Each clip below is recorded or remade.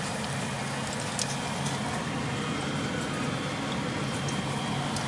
recorded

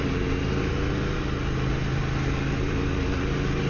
recorded